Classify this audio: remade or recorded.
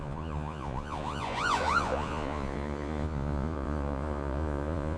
remade